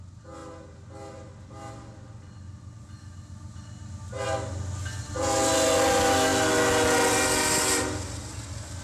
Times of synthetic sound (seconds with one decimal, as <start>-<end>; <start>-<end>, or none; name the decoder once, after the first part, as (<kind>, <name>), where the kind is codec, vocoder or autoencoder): none